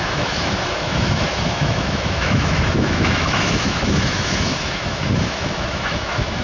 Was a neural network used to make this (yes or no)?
yes